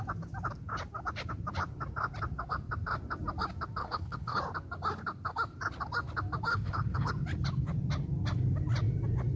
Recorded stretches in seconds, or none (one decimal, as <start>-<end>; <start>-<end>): 0.0-3.8; 4.4-6.5; 7.1-9.4